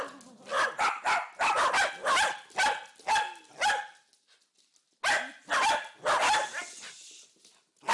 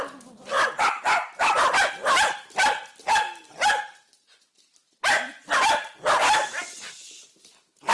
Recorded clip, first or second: first